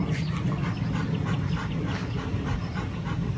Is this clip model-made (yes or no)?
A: no